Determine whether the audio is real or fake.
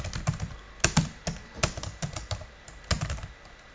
real